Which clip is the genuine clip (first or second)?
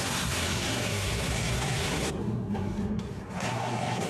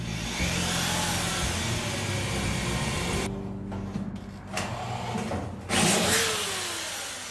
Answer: second